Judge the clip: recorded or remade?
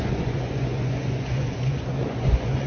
remade